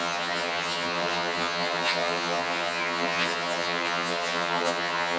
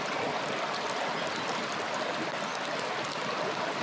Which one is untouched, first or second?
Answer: second